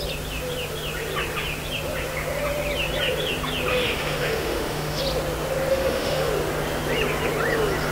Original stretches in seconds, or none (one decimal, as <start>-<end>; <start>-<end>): 0.0-3.7; 5.0-5.7; 6.3-7.9